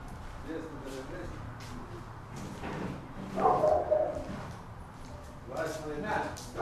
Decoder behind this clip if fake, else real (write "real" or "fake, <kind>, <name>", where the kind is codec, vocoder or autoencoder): real